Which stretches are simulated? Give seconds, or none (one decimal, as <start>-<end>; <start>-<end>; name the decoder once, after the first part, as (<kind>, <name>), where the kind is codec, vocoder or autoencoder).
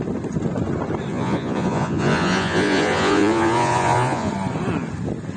1.1-4.3 (vocoder, Vocos)